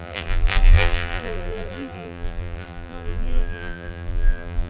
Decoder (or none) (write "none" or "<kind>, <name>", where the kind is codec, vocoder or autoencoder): vocoder, BigVGAN v2